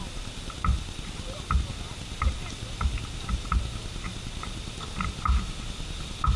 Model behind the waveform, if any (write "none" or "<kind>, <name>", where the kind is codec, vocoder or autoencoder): none